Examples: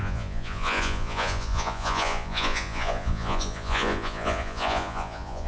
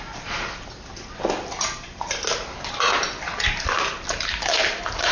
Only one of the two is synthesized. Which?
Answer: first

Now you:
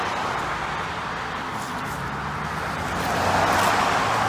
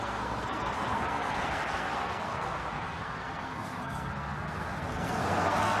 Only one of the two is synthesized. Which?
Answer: second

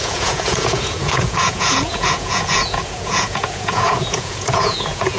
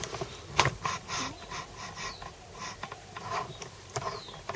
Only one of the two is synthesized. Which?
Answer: first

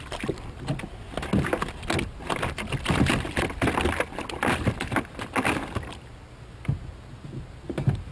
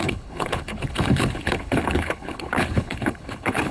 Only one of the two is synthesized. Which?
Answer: second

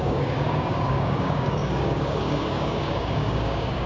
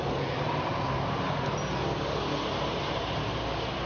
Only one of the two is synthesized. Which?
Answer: first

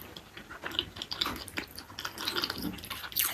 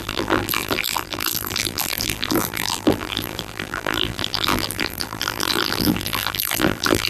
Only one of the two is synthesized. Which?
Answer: second